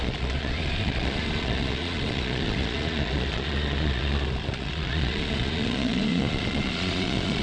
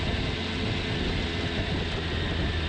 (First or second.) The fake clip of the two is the first